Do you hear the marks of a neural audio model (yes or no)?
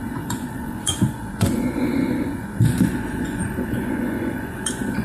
yes